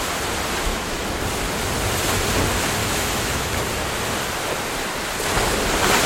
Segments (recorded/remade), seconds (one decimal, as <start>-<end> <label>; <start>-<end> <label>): 0.0-0.7 recorded; 0.7-1.2 remade; 1.2-2.8 recorded; 2.8-3.5 remade; 3.5-6.1 recorded